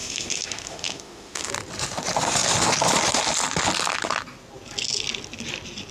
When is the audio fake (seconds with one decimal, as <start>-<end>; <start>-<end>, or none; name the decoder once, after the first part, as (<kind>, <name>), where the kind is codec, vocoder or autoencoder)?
0.0-1.5 (autoencoder, DAC-VAE)